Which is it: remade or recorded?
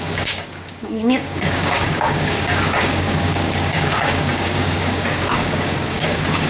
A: remade